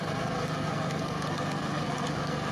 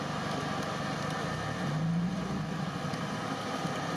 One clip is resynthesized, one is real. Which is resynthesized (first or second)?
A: first